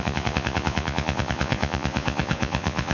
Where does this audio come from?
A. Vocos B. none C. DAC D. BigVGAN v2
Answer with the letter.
A